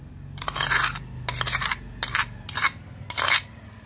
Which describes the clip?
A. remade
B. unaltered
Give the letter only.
B